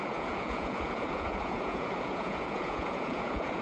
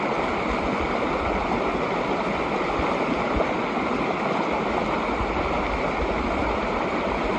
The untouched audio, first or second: second